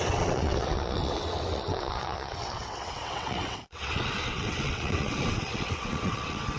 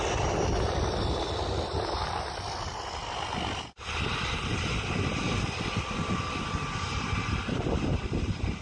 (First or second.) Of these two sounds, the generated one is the first